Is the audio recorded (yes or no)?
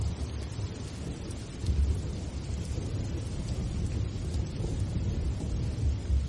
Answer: yes